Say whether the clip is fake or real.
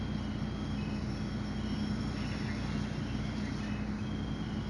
real